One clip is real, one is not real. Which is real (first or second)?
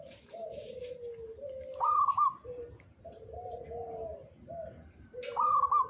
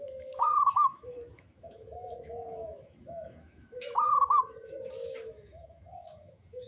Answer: first